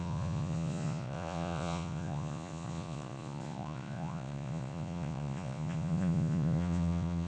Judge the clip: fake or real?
fake